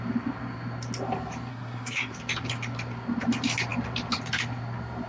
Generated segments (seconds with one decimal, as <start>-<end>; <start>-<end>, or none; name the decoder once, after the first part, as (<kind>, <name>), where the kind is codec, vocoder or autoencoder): 1.5-2.1 (codec, SNAC)